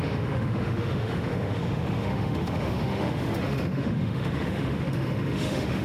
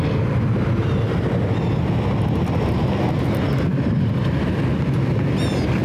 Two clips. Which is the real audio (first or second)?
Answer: second